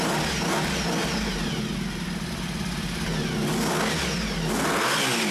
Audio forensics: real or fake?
real